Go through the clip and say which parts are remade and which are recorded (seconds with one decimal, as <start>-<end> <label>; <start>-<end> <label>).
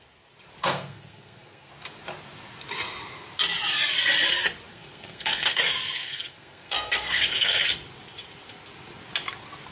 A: 0.0-0.6 recorded; 0.6-1.7 remade; 1.7-4.7 recorded; 4.7-7.6 remade; 7.6-9.7 recorded